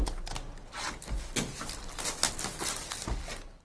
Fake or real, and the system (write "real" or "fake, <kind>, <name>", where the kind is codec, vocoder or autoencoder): real